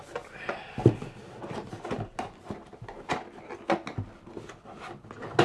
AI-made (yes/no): no